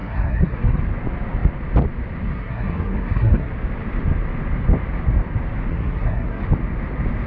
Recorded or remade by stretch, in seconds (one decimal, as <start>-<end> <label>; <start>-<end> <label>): 0.0-0.8 remade; 0.8-2.3 recorded; 2.3-3.5 remade; 3.5-5.7 recorded; 5.7-6.4 remade; 6.4-7.3 recorded

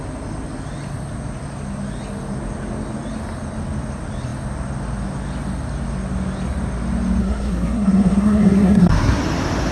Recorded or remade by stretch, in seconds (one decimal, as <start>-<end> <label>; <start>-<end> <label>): 0.0-7.2 recorded; 7.2-9.2 remade; 9.2-9.7 recorded